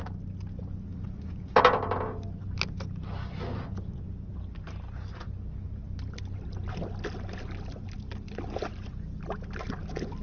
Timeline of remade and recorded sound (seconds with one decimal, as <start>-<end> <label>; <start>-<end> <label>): 0.0-0.9 recorded; 0.9-1.6 remade; 1.6-10.2 recorded